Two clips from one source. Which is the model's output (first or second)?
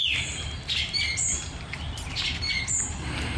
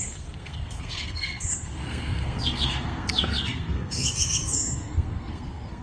second